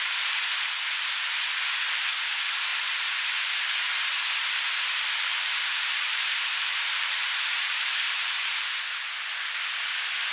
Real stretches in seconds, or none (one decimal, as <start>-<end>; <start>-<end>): 0.0-2.7; 3.4-5.3; 8.8-10.3